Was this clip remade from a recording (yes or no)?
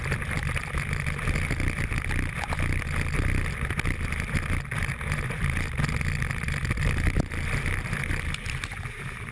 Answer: no